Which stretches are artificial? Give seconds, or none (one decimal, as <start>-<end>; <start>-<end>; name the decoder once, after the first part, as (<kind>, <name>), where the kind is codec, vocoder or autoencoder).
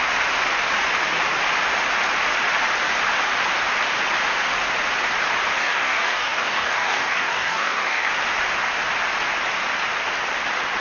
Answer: 5.6-8.1 (codec, DAC)